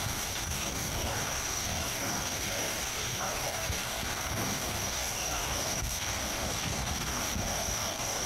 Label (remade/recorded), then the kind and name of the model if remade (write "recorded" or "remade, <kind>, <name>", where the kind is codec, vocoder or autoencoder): remade, codec, DAC